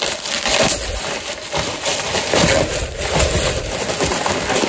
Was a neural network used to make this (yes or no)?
no